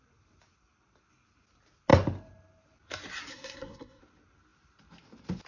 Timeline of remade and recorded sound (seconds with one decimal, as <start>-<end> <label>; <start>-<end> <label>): 0.0-3.3 recorded; 3.3-4.0 remade; 4.0-5.5 recorded